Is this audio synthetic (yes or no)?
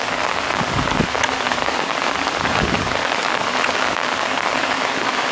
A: yes